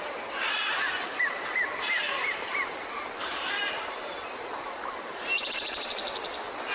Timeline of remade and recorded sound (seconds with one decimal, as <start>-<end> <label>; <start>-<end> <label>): 0.0-2.2 recorded; 2.2-5.9 remade; 5.9-6.7 recorded